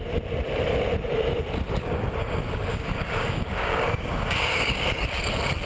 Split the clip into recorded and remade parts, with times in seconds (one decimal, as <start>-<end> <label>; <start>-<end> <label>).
0.0-1.8 recorded; 1.8-5.2 remade; 5.2-5.7 recorded